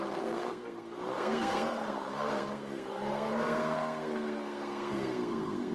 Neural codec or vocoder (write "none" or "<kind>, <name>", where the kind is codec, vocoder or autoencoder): codec, SNAC